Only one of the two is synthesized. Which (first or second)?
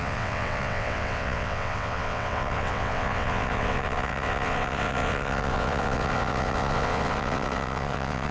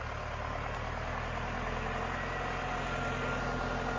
first